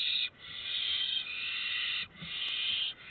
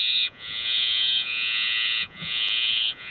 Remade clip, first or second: second